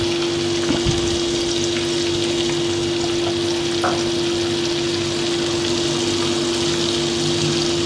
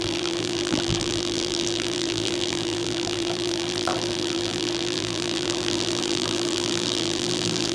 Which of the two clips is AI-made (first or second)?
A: second